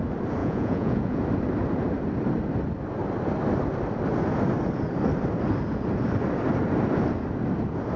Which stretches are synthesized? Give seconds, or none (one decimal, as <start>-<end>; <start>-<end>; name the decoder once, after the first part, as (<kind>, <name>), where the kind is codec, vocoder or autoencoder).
0.4-1.2 (vocoder, Vocos)